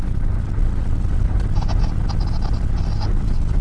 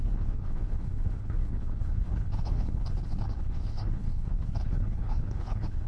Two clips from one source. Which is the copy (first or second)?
second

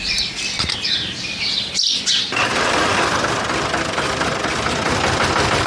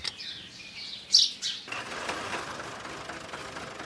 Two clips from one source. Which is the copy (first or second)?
first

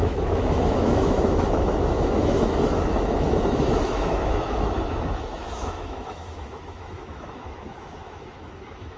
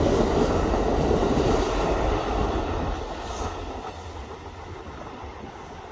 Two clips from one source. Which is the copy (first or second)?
first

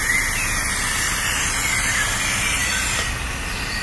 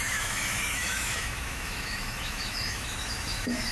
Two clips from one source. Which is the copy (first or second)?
second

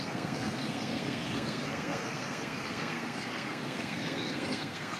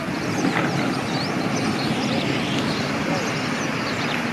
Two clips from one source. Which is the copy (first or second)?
first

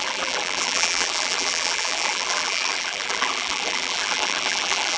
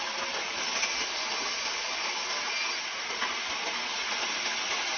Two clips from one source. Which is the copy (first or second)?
first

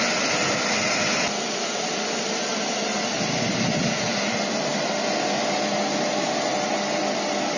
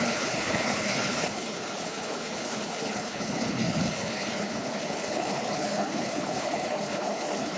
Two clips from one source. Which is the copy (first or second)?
second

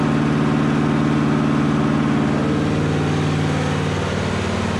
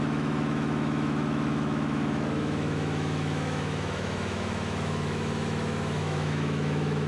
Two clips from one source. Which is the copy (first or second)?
second